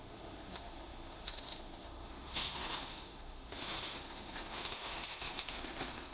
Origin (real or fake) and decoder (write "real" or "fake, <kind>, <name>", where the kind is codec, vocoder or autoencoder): fake, autoencoder, DAC-VAE